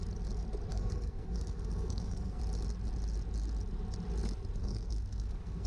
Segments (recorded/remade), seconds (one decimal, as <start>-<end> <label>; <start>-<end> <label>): 0.0-0.7 recorded; 0.7-2.4 remade; 2.4-4.6 recorded; 4.6-5.7 remade